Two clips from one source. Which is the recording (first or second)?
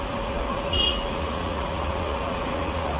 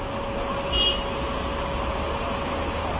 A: second